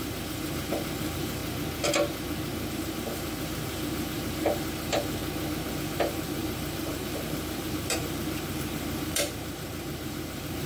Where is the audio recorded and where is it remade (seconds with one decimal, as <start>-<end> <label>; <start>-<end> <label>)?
0.0-1.4 remade; 1.4-2.7 recorded; 2.7-5.2 remade; 5.2-5.7 recorded; 5.7-10.7 remade